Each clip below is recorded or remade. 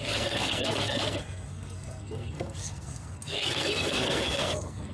remade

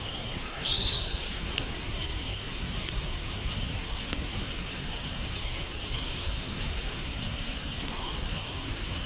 remade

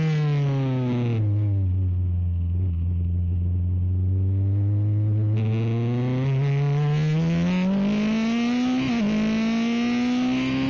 recorded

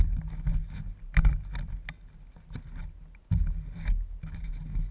recorded